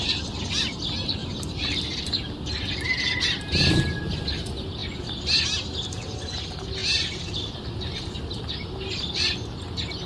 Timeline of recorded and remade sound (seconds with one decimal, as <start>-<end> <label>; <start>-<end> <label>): 0.0-1.2 recorded; 1.2-3.1 remade; 3.1-6.8 recorded; 6.8-9.2 remade; 9.2-10.1 recorded